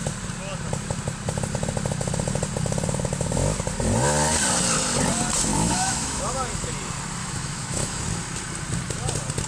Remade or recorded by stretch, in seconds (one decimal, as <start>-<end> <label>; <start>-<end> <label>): 0.0-5.5 recorded; 5.5-6.2 remade; 6.2-7.2 recorded; 7.2-8.0 remade; 8.0-9.5 recorded